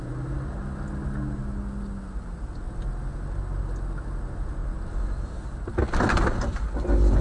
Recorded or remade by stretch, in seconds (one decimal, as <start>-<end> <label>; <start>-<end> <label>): 0.0-7.2 recorded